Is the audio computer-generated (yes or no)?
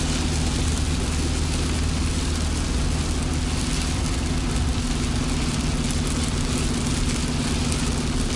no